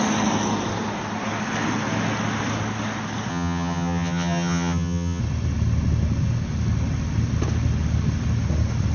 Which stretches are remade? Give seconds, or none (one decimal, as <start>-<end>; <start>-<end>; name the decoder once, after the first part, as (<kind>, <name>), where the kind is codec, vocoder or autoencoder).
3.3-5.2 (vocoder, HiFi-GAN)